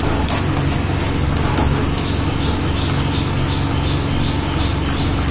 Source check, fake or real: real